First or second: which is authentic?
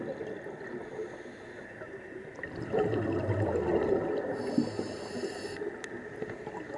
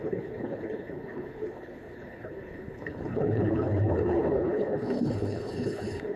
first